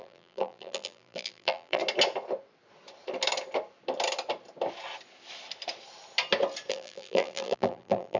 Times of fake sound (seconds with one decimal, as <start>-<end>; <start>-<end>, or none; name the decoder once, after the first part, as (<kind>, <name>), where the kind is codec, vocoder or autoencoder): 0.0-1.8 (vocoder, BigVGAN v2); 6.7-8.2